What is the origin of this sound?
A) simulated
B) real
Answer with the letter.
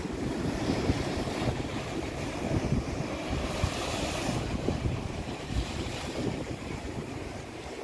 A